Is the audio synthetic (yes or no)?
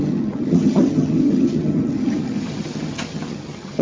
yes